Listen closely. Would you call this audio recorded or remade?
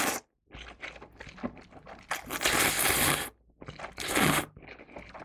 recorded